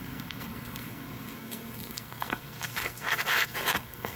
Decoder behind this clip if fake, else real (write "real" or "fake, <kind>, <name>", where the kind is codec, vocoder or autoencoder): fake, codec, SNAC